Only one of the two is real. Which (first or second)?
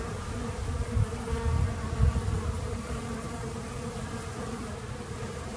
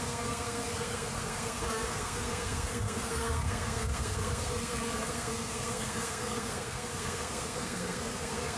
first